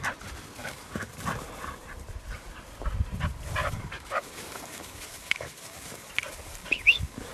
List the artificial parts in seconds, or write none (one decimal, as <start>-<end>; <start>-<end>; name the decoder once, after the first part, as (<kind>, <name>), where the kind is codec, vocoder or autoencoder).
0.6-1.1 (codec, DAC); 3.6-6.1; 6.6-7.3